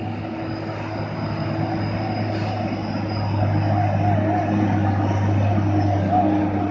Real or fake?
real